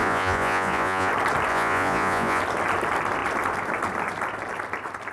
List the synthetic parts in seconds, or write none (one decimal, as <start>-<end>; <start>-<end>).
0.0-1.1; 1.5-2.4